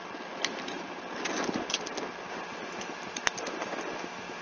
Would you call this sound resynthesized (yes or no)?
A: no